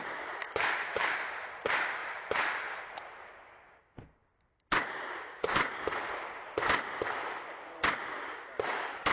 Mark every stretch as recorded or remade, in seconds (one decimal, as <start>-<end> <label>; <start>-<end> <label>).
0.0-2.0 recorded; 2.0-3.3 remade; 3.3-4.2 recorded; 4.2-6.5 remade; 6.5-9.1 recorded